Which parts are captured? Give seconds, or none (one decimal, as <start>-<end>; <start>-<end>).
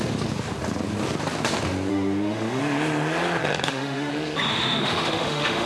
0.0-1.9; 2.6-3.4; 4.1-4.5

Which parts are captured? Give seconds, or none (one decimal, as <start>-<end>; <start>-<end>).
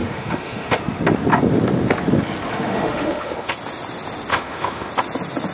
0.8-2.5; 3.5-4.3; 4.9-5.5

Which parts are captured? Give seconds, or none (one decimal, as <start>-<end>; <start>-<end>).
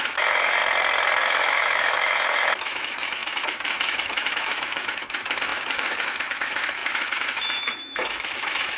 0.6-1.2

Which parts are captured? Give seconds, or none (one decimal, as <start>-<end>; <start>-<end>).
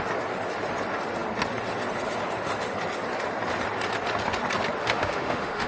0.0-4.8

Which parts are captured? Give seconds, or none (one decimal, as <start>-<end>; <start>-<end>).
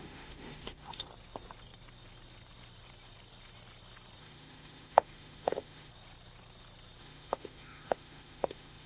1.1-4.2; 5.9-7.0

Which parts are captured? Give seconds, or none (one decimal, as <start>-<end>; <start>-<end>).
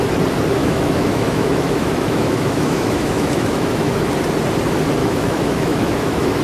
0.0-0.6; 4.1-5.0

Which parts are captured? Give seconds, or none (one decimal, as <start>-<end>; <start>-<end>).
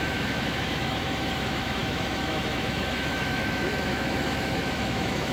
none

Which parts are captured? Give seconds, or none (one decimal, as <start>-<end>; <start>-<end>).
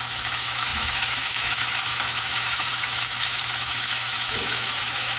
none